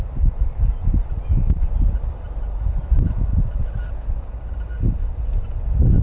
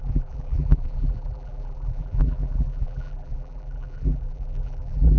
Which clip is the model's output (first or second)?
second